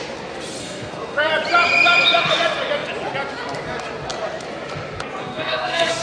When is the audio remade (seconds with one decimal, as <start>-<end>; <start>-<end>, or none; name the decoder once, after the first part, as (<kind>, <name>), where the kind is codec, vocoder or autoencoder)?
0.6-1.3 (codec, SNAC); 5.2-6.0